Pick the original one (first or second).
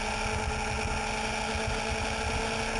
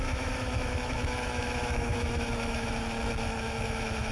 first